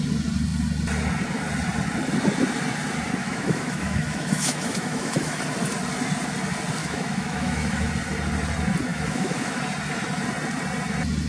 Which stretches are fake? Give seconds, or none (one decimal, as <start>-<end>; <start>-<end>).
3.2-5.4; 6.8-7.9; 8.9-9.6